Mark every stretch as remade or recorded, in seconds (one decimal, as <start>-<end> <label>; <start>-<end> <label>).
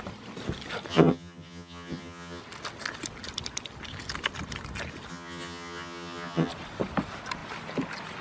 0.0-0.9 recorded; 0.9-2.4 remade; 2.4-5.1 recorded; 5.1-6.5 remade; 6.5-8.2 recorded